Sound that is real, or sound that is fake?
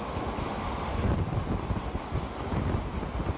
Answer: real